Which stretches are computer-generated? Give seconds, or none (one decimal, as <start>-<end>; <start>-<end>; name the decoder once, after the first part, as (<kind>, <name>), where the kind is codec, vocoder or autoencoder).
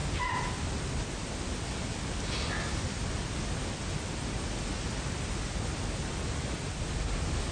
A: none